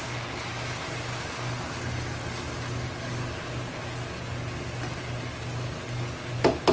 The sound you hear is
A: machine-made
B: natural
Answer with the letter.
B